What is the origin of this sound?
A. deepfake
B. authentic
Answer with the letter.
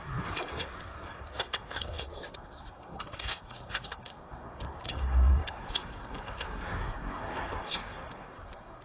A